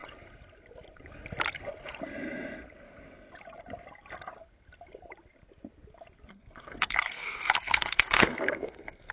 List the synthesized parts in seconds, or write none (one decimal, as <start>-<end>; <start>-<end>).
6.3-9.1